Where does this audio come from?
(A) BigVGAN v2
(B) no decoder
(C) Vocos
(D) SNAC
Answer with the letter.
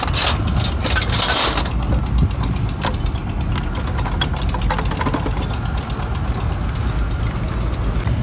B